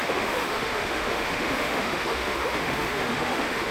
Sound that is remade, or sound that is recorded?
remade